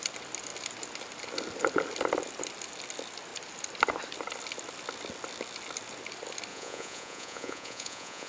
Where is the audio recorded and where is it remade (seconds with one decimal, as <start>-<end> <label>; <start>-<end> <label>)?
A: 0.0-6.5 recorded; 6.5-8.3 remade